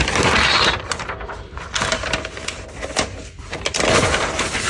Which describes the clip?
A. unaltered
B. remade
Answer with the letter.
A